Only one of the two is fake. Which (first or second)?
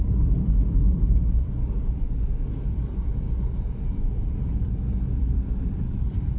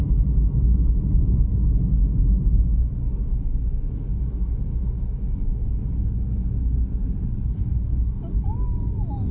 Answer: first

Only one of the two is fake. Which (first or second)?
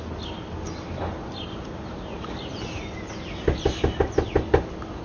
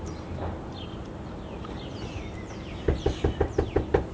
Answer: second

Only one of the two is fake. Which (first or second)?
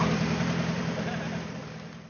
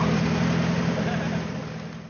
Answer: first